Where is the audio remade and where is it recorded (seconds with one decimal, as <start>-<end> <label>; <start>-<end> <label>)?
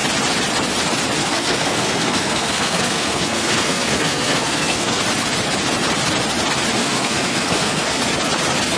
0.0-1.2 recorded; 1.2-5.0 remade; 5.0-6.8 recorded; 6.8-8.0 remade; 8.0-8.8 recorded